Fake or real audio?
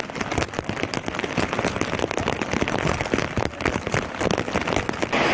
real